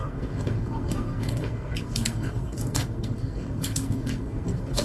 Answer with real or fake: fake